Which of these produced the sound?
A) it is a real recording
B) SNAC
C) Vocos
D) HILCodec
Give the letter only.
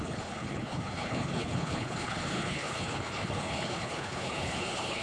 D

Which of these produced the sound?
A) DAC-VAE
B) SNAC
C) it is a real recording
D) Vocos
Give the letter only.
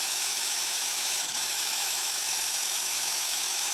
A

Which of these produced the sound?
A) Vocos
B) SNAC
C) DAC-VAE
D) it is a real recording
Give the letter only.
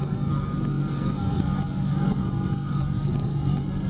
B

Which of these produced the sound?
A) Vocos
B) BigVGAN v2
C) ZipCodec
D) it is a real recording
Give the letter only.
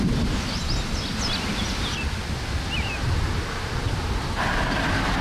D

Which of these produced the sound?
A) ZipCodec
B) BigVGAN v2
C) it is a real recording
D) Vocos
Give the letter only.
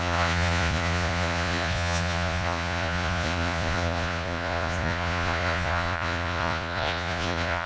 D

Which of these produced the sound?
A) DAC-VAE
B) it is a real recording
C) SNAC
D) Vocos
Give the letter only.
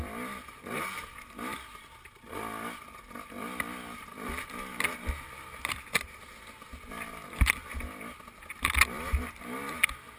B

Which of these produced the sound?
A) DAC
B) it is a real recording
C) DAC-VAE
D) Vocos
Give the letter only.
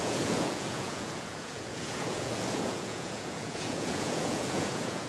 D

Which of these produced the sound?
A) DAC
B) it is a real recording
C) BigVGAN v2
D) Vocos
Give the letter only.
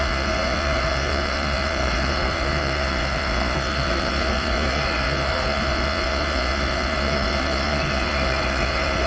D